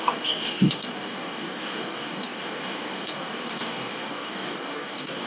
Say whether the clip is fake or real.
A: fake